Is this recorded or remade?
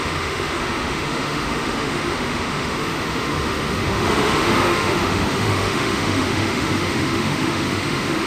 remade